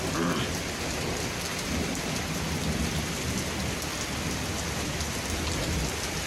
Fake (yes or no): no